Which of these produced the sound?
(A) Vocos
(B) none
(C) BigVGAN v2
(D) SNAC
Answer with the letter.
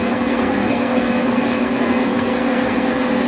D